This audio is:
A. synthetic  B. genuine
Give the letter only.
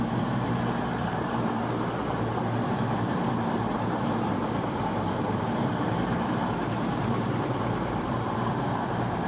A